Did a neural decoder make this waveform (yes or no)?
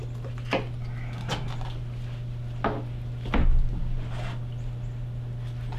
no